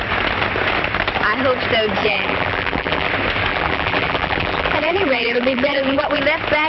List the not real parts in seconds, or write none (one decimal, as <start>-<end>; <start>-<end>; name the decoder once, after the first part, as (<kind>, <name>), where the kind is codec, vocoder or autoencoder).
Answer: 2.0-3.1 (vocoder, BigVGAN v2); 3.5-6.2

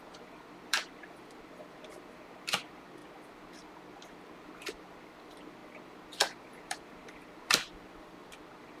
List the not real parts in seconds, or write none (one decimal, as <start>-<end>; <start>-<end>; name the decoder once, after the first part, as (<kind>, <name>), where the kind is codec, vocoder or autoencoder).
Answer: 0.0-8.8 (vocoder, BigVGAN v2)

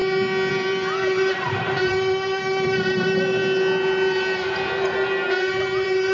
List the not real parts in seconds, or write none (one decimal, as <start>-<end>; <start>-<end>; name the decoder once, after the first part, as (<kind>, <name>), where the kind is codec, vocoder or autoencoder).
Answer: 0.5-3.4 (vocoder, BigVGAN v2); 5.5-6.1

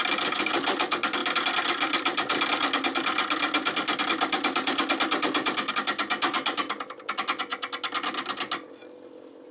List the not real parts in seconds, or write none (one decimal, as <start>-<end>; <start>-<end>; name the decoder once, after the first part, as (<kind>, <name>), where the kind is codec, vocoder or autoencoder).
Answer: none

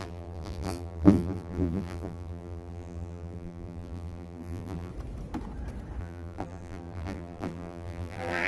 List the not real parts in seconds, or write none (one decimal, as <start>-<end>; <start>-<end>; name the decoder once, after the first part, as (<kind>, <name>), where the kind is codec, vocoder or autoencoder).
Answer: 0.0-4.9 (vocoder, BigVGAN v2); 6.0-8.5